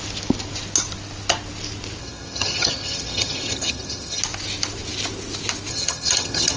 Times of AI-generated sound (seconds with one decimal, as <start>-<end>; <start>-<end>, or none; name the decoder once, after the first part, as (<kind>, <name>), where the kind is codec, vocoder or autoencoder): 2.0-4.2 (vocoder, HiFi-GAN); 5.7-6.6